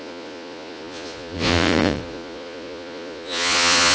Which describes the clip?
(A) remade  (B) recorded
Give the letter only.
A